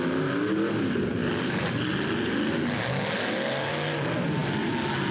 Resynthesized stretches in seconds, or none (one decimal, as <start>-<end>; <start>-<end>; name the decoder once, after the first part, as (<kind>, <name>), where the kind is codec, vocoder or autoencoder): none